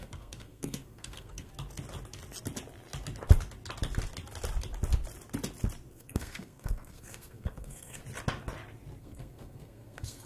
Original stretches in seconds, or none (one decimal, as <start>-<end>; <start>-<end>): 1.5-5.9; 8.0-9.0